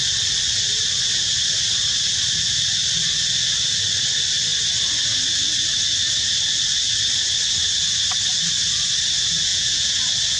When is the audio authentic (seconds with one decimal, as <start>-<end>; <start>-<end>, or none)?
0.0-9.5; 10.0-10.4

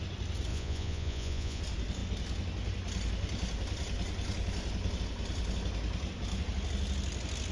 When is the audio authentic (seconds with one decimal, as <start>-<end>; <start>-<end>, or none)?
0.0-0.5; 1.6-7.5

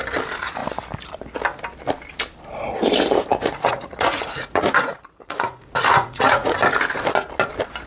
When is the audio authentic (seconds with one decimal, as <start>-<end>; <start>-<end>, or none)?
0.0-3.3; 6.6-7.9

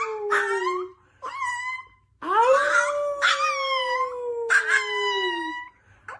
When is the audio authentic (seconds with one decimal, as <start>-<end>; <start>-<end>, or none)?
0.0-6.2

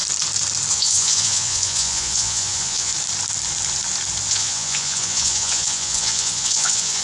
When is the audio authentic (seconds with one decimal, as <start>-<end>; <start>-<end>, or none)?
0.0-0.7; 2.9-4.3